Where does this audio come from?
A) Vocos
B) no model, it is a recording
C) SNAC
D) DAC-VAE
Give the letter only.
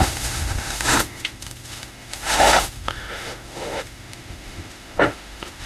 D